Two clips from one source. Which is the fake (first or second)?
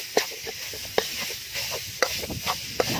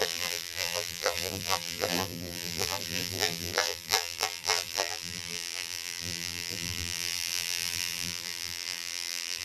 second